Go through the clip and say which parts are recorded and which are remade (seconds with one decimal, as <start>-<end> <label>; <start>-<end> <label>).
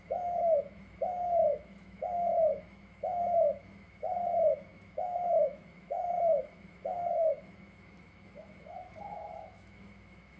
0.0-10.4 remade